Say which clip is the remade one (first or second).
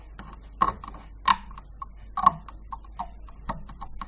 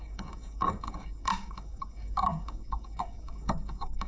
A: second